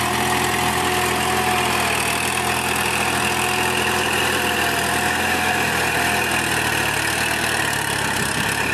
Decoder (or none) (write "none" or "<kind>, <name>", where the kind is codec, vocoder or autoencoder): none